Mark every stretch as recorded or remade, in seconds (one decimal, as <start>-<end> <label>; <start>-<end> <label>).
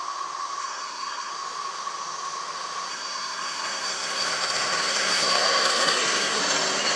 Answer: 0.0-0.6 recorded; 0.6-1.3 remade; 1.3-2.9 recorded; 2.9-6.4 remade; 6.4-7.0 recorded